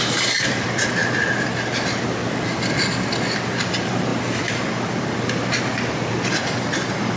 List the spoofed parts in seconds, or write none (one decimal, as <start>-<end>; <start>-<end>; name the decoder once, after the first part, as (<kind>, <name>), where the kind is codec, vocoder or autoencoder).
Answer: none